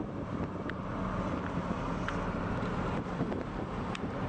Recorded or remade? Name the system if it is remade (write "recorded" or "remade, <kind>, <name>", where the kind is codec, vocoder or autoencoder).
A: recorded